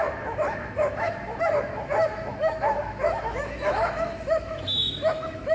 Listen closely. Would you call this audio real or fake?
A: fake